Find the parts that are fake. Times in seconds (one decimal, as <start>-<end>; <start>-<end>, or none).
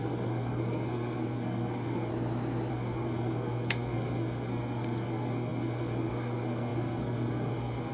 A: 0.0-2.1; 2.7-7.9